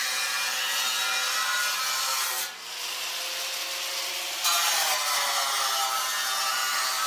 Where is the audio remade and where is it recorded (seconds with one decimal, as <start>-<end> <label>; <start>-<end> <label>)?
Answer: 0.0-7.1 recorded